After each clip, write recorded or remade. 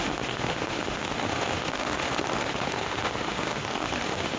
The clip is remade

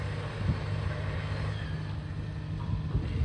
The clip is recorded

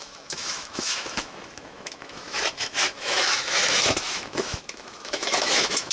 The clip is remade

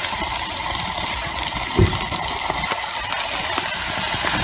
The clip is recorded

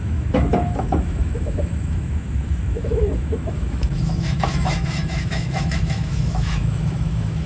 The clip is remade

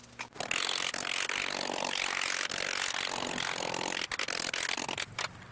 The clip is recorded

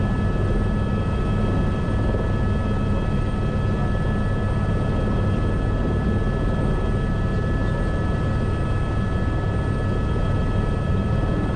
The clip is recorded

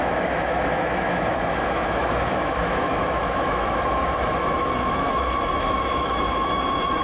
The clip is remade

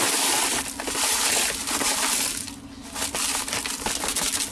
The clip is recorded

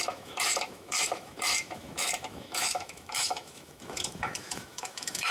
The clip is remade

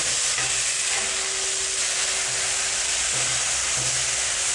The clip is recorded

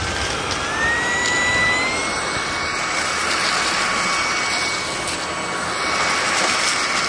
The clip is recorded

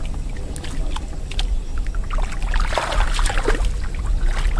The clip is recorded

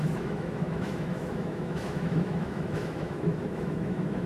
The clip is remade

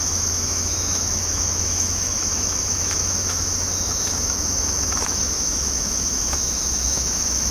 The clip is remade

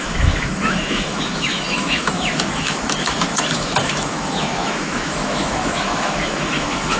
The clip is remade